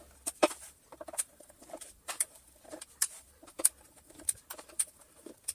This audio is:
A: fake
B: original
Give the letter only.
A